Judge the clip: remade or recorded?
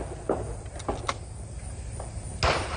recorded